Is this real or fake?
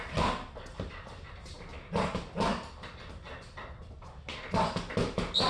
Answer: real